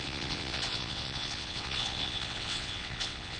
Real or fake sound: fake